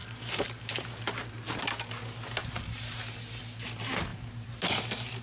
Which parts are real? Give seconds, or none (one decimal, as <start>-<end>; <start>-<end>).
1.3-4.1